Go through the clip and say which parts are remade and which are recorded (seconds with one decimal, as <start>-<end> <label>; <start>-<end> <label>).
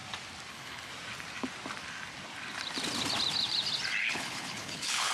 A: 0.0-0.5 recorded; 0.5-0.9 remade; 0.9-4.0 recorded; 4.0-5.1 remade